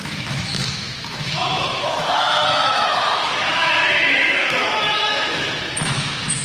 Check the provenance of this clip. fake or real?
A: fake